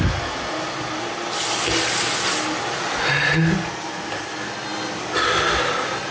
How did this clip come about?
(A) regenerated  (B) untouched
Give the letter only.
B